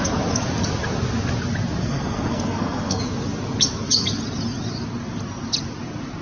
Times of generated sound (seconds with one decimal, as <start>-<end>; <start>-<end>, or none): 1.8-3.0